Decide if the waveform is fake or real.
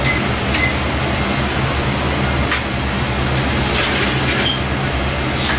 real